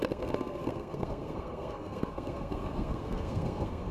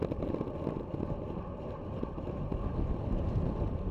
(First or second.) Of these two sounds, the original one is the second